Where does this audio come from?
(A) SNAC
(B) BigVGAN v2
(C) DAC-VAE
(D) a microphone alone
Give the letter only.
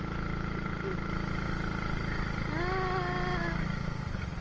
D